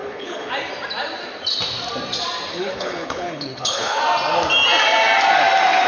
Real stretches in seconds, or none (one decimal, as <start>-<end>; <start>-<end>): 0.5-2.5; 4.0-5.9